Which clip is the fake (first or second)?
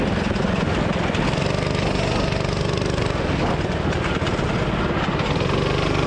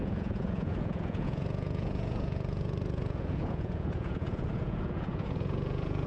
second